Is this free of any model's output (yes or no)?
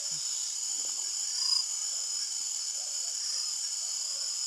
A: no